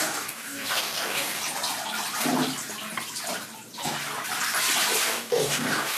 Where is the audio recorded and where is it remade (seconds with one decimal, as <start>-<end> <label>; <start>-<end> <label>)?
0.0-1.4 remade; 1.4-5.0 recorded; 5.0-6.0 remade